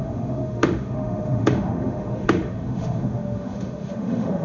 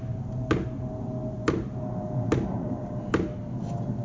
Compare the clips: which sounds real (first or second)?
second